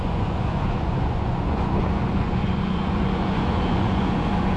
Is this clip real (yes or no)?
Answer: no